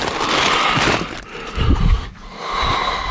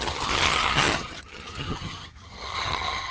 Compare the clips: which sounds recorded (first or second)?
first